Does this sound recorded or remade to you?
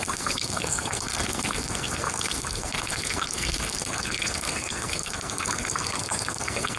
remade